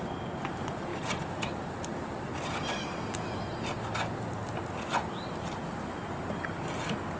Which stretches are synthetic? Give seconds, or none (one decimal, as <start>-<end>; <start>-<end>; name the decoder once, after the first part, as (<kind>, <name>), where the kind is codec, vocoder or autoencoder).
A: none

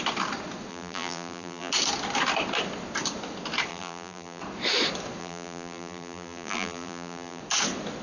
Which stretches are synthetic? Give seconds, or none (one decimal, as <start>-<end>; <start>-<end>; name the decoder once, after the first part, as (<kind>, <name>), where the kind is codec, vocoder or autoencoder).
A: 0.7-1.7 (vocoder, BigVGAN v2); 3.7-4.4; 5.2-7.4

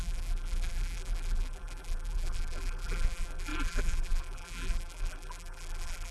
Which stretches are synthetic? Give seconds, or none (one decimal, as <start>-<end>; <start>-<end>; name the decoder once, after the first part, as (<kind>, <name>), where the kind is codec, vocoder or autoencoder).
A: 0.0-6.1 (vocoder, BigVGAN v2)